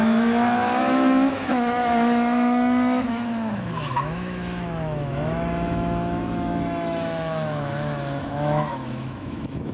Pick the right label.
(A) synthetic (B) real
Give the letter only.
A